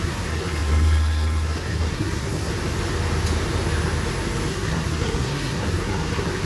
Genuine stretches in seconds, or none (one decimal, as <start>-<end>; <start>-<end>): 2.5-4.5

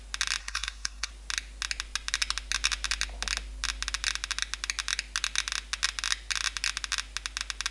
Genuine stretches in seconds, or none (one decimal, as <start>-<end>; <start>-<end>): 0.0-0.4; 1.1-7.7

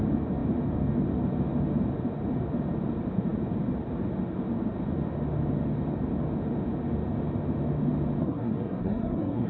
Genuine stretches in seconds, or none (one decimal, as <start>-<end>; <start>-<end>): 0.0-8.2

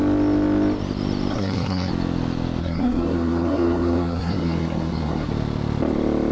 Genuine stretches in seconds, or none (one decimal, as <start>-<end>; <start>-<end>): 0.0-1.3; 1.9-2.6; 5.3-6.3

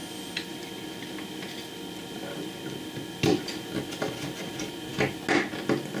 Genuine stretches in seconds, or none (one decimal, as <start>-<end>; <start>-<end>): 0.0-6.0

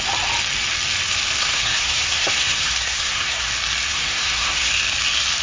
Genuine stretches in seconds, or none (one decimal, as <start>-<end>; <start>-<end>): 0.0-1.4; 3.5-3.9; 4.7-5.4

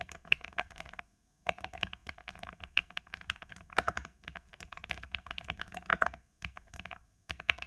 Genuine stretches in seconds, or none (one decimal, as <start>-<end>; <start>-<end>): none

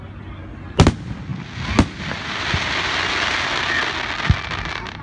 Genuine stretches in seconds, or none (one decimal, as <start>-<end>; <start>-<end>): 0.0-5.0